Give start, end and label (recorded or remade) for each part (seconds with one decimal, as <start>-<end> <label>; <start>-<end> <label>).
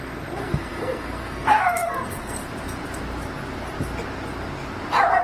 0.0-2.4 remade; 2.4-5.2 recorded